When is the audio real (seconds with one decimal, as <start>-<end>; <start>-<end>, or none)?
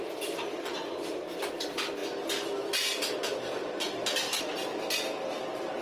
0.0-5.8